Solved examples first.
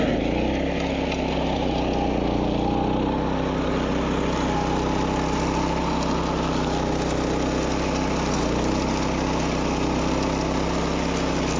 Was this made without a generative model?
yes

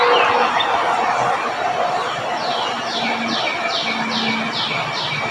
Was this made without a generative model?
yes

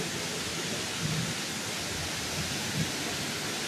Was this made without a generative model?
yes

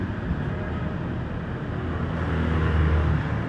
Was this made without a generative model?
yes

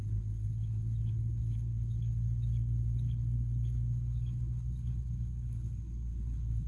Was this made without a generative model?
no